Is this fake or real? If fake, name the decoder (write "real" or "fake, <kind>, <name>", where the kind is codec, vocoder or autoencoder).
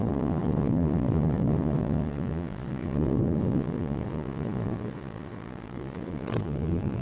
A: fake, vocoder, Vocos